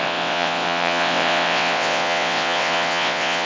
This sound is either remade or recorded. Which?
remade